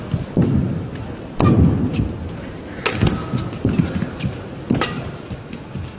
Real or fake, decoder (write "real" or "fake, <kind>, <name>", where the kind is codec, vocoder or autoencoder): real